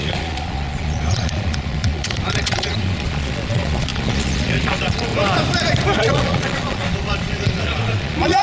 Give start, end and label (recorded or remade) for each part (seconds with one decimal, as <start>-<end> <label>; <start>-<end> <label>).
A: 0.0-5.1 remade; 5.1-6.0 recorded; 6.0-8.4 remade